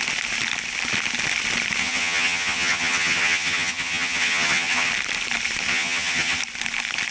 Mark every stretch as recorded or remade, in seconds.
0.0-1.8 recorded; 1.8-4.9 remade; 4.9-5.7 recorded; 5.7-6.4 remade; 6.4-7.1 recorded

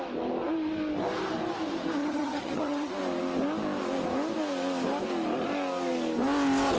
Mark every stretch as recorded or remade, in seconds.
0.0-2.0 recorded; 2.0-2.9 remade; 2.9-6.8 recorded

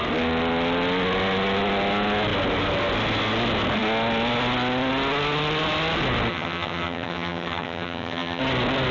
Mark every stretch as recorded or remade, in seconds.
0.0-6.3 recorded; 6.3-8.4 remade; 8.4-8.9 recorded

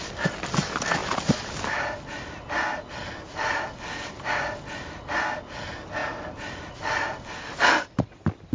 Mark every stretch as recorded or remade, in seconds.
0.0-8.5 recorded